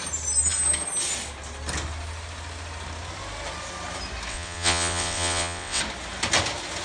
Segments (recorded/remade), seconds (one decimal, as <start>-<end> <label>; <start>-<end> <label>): 0.0-4.3 recorded; 4.3-5.8 remade; 5.8-6.8 recorded

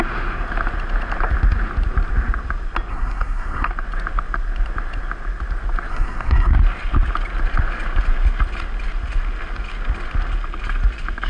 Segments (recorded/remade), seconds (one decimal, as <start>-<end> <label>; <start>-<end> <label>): 0.0-2.9 recorded; 2.9-3.7 remade; 3.7-5.9 recorded; 5.9-6.5 remade; 6.5-11.3 recorded

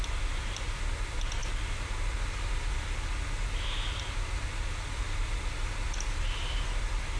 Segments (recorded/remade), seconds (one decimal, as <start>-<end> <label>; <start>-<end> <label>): 0.0-7.2 recorded

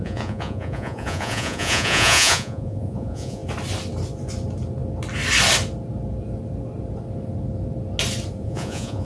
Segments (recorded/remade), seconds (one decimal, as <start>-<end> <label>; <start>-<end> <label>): 0.0-3.4 remade; 3.4-8.4 recorded; 8.4-9.0 remade

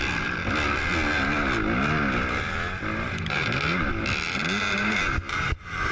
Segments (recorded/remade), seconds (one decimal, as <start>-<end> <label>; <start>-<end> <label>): 0.0-0.4 remade; 0.4-3.9 recorded; 3.9-4.4 remade; 4.4-5.4 recorded; 5.4-5.9 remade

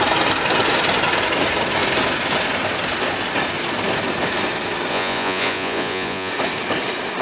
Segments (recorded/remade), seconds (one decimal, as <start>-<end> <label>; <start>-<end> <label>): 0.0-4.9 recorded; 4.9-6.3 remade; 6.3-7.2 recorded

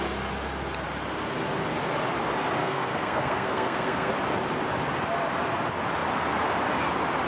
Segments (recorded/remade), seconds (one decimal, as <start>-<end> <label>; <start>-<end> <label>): 0.0-2.6 recorded; 2.6-4.1 remade; 4.1-7.3 recorded

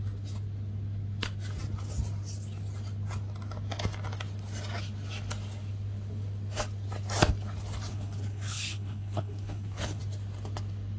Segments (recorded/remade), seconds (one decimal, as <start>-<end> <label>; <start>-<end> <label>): 0.0-7.9 recorded; 7.9-10.0 remade; 10.0-11.0 recorded